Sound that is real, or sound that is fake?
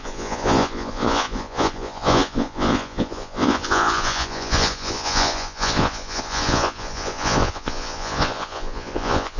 fake